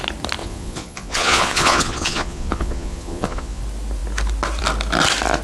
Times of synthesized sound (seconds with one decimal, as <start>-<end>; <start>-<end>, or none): 0.4-3.6